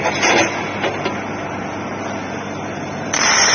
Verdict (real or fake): real